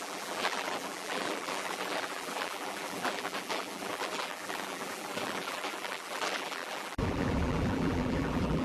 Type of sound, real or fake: fake